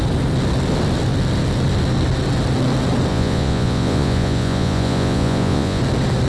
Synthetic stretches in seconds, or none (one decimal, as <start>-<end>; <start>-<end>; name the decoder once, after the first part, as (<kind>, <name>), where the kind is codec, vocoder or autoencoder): 3.1-5.8 (vocoder, Vocos)

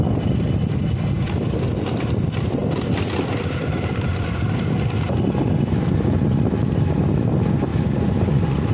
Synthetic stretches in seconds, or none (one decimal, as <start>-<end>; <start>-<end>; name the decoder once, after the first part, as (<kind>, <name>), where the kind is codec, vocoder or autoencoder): 7.7-8.7 (vocoder, Vocos)

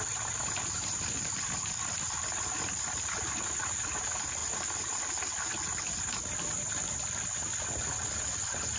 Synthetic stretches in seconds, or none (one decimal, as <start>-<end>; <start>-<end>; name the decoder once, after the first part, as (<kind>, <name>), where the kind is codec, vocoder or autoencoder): none

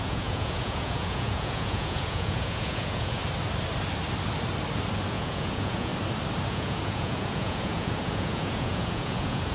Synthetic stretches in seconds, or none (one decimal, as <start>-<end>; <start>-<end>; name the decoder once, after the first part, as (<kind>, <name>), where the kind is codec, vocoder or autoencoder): 0.0-3.2 (vocoder, Vocos); 5.1-5.9; 6.5-9.5

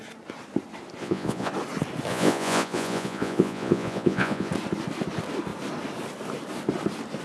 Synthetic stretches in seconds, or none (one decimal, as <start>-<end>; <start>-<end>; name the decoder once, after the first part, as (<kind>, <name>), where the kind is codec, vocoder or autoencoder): 1.0-1.5 (vocoder, Vocos); 2.1-4.5

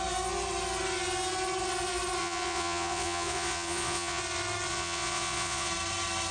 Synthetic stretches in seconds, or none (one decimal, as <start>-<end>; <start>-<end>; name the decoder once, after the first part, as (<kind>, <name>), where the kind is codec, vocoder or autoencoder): 2.2-4.2 (vocoder, Vocos); 4.7-5.7

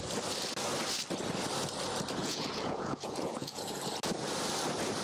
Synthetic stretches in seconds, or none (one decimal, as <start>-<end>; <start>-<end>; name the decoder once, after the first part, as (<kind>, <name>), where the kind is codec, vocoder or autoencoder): 2.2-3.8 (vocoder, Vocos)